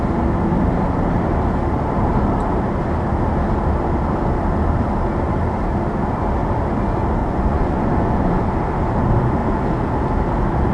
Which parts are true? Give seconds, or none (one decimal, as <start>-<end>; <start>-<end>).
0.0-7.2; 8.5-10.7

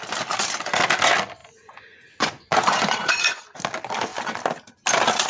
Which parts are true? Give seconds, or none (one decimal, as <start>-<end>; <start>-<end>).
0.0-1.4; 3.4-5.3

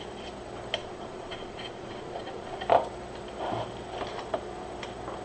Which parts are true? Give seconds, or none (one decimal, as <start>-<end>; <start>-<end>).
0.0-0.8; 2.6-5.2

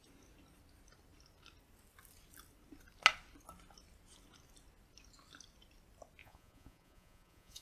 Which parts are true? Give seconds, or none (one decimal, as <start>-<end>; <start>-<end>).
0.0-6.2

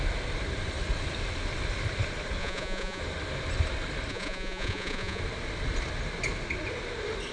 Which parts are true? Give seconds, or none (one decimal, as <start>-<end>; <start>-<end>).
0.0-2.4; 3.0-4.1; 5.2-7.3

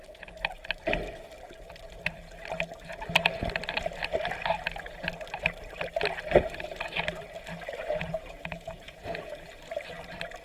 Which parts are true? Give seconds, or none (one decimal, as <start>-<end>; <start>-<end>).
0.0-7.8; 9.5-10.4

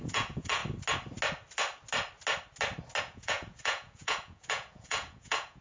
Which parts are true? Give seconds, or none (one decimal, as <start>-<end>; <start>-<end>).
0.6-3.0

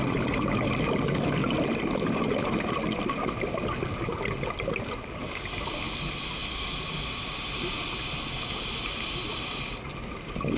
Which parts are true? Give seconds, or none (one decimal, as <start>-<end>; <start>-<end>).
0.0-10.6